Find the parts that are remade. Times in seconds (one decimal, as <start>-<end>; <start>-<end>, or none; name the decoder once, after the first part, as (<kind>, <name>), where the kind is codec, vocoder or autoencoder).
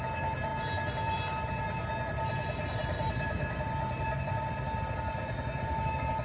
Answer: none